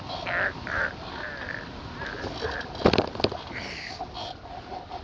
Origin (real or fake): real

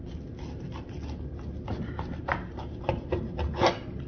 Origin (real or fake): real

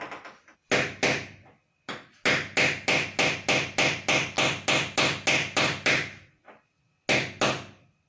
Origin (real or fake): real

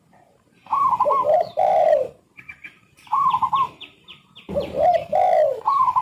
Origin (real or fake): fake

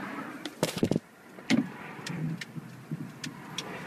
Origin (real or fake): real